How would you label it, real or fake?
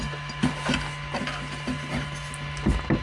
real